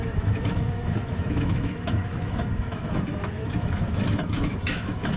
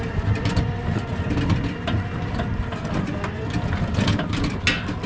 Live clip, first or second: second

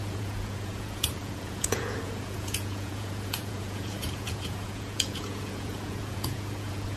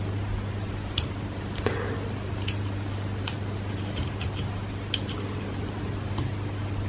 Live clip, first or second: second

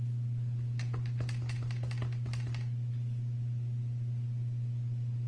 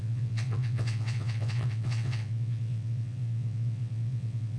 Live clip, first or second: first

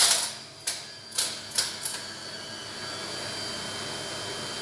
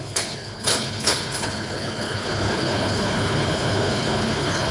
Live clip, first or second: first